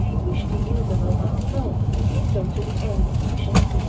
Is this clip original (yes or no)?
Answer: yes